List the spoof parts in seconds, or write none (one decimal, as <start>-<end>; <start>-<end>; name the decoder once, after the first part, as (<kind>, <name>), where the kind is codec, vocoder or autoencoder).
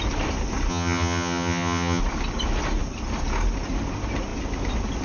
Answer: 0.7-2.0 (vocoder, HiFi-GAN)